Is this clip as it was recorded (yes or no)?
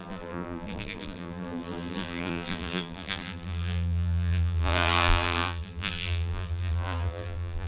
no